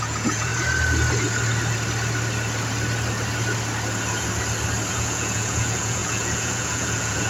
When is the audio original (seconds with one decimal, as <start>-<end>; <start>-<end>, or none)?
0.5-4.9